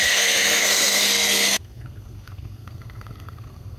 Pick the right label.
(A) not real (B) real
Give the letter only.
A